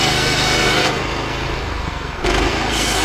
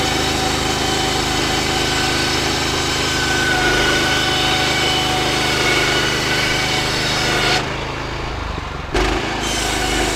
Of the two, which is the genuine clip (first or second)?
second